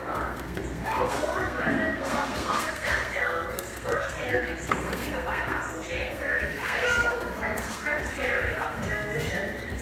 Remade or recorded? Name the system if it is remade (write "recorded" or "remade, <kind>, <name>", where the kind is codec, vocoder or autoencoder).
remade, codec, SNAC